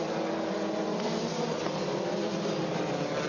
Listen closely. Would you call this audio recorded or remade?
recorded